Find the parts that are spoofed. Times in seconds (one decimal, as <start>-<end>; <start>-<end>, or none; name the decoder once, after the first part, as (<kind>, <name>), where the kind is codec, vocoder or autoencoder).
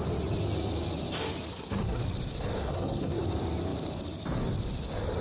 1.5-2.0 (codec, SNAC); 2.6-3.2